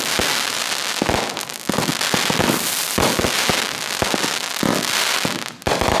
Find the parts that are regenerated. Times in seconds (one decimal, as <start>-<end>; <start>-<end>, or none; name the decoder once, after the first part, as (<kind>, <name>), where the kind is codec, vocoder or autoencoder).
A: none